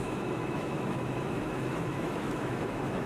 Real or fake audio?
fake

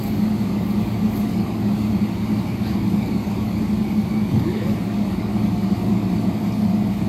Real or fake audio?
fake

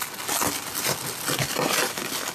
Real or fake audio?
real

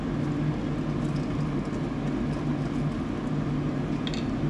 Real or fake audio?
real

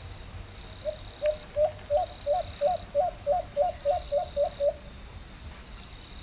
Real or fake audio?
real